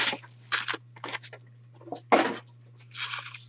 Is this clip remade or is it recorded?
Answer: recorded